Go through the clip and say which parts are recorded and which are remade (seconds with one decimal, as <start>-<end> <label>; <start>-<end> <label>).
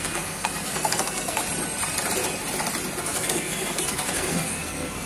0.0-1.4 remade; 1.4-3.0 recorded; 3.0-5.1 remade